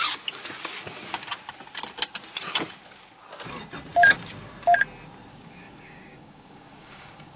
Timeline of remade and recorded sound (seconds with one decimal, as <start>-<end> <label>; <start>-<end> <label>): 0.0-5.3 recorded; 5.3-7.4 remade